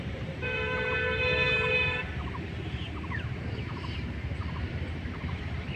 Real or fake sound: fake